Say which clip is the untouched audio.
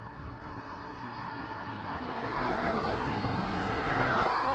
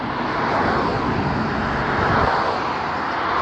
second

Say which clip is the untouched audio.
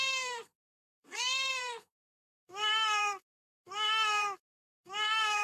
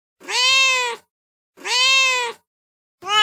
second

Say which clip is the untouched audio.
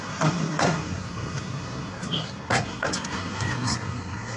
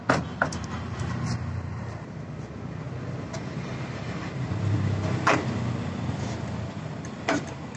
second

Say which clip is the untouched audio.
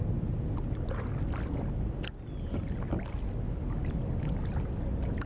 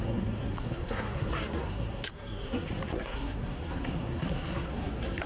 first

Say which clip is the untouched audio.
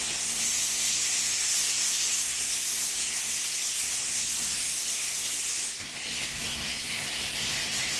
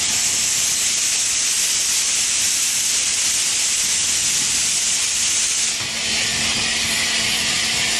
second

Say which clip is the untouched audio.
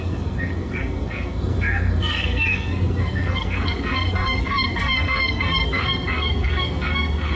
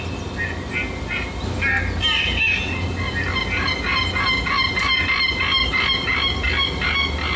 second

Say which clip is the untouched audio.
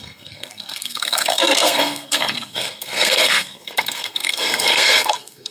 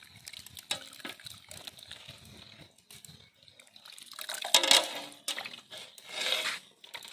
second